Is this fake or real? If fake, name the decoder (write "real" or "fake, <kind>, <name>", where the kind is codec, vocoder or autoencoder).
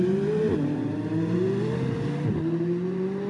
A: real